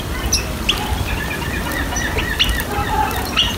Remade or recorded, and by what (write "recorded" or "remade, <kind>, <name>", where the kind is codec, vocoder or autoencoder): recorded